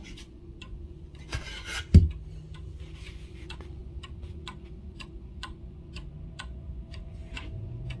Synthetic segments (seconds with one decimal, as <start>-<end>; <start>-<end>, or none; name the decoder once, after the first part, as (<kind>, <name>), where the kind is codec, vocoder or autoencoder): 0.0-1.8 (vocoder, Vocos); 3.0-8.0